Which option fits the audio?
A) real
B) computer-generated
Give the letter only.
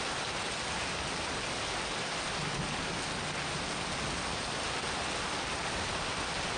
A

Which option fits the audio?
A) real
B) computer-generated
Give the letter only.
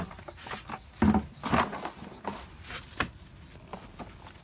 A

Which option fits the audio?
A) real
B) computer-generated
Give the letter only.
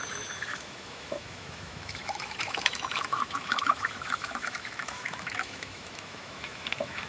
B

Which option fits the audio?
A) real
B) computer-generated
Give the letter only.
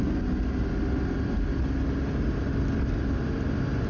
A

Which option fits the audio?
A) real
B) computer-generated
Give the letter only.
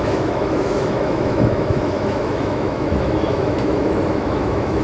B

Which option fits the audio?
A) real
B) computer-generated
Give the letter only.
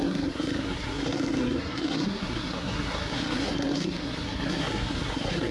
B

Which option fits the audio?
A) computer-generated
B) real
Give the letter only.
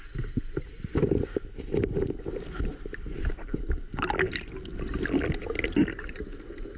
B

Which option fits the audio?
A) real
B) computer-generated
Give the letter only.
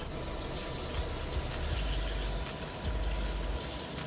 A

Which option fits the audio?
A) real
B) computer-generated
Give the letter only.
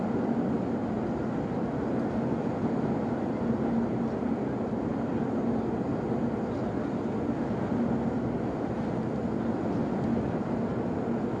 A